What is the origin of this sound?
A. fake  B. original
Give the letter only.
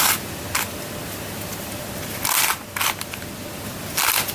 B